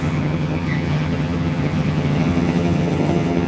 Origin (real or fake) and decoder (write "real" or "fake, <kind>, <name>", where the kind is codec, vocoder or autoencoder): fake, vocoder, HiFi-GAN